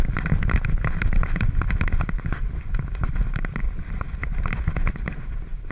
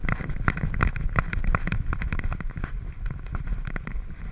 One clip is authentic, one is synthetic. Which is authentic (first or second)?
second